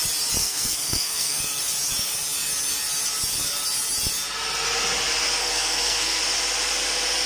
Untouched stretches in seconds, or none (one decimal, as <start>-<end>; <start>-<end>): 0.0-0.4; 1.4-5.4; 6.2-7.3